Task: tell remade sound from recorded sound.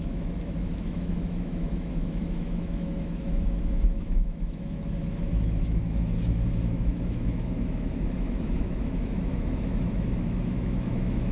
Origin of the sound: remade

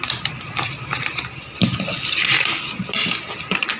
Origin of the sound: recorded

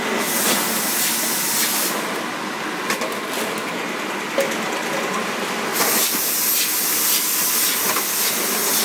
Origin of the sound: recorded